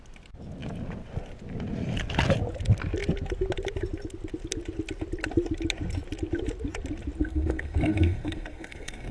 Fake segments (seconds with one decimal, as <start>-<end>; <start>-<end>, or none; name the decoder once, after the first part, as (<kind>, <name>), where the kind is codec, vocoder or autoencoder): 7.2-9.1 (codec, SNAC)